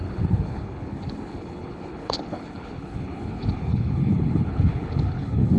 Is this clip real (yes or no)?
no